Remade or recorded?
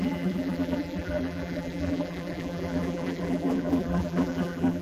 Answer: remade